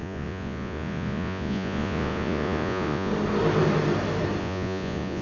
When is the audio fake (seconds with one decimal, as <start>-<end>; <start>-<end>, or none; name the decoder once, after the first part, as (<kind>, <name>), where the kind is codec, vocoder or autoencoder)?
0.0-3.1 (vocoder, Vocos); 4.4-5.2